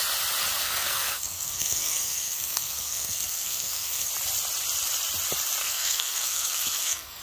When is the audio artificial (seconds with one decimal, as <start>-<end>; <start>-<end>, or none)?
0.6-4.1; 5.6-7.2